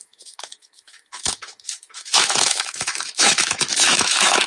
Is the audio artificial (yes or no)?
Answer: yes